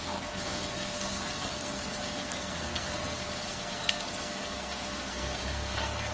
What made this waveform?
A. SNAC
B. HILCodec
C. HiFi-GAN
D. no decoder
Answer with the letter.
A